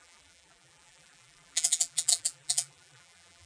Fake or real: fake